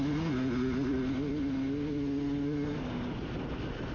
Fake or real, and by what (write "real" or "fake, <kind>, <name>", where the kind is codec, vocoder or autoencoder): real